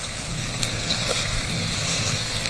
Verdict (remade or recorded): remade